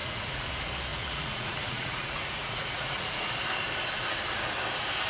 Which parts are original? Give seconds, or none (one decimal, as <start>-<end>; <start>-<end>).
0.5-0.9; 3.3-5.1